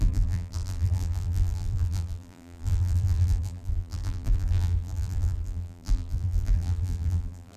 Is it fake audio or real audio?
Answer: fake